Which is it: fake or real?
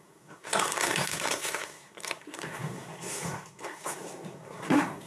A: fake